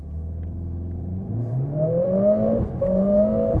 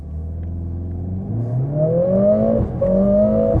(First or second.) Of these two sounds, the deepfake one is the first